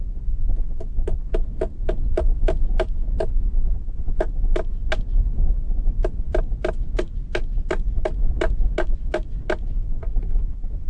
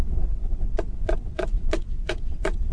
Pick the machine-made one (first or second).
second